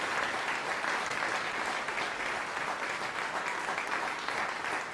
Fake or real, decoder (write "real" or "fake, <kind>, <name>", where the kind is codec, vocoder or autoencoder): real